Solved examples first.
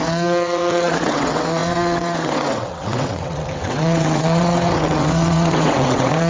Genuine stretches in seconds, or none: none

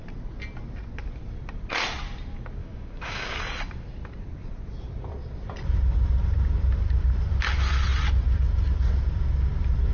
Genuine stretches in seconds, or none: 0.0-2.6; 3.4-9.9